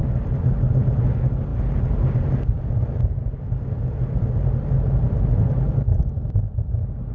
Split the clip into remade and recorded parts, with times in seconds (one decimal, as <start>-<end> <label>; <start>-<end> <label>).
0.0-7.1 recorded